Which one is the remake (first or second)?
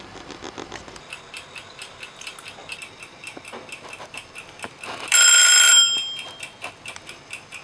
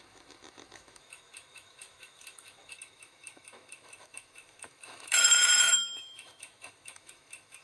second